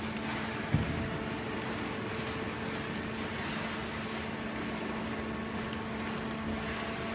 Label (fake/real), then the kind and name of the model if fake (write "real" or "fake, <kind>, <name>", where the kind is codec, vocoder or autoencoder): real